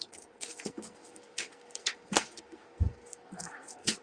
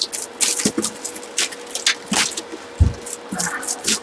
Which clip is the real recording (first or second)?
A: second